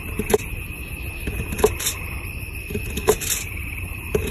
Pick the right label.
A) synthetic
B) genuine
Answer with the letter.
B